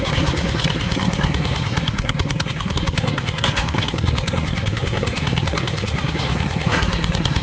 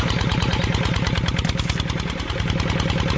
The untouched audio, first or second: second